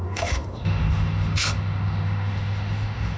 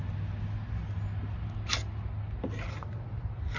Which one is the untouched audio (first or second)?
second